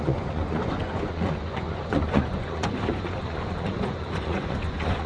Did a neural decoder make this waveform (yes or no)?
yes